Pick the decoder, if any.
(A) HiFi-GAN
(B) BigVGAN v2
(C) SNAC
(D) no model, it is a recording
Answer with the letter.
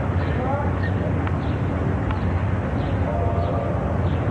D